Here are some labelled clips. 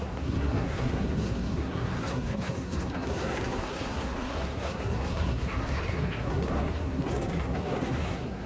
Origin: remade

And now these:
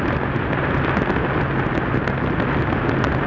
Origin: recorded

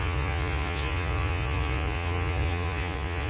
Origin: remade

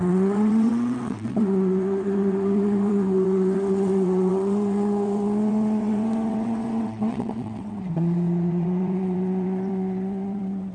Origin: remade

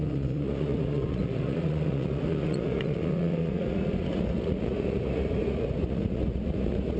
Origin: remade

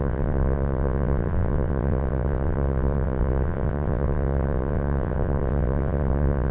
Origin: remade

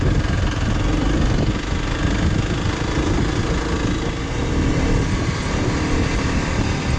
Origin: recorded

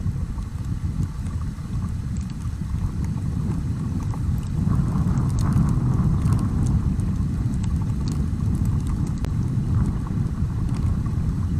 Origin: remade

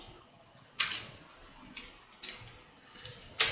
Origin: recorded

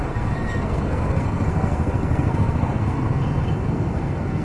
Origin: remade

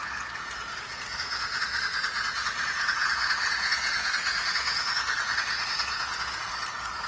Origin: remade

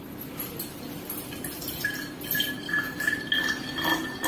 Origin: recorded